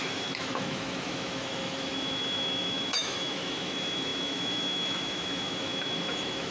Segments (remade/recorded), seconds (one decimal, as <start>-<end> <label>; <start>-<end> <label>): 0.0-6.5 remade